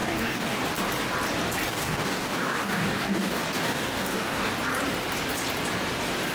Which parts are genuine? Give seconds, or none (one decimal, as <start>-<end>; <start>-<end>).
0.6-1.7; 4.5-6.3